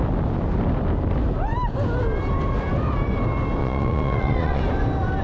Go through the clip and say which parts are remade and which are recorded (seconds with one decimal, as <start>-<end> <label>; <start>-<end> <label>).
0.0-3.6 recorded; 3.6-4.6 remade; 4.6-5.2 recorded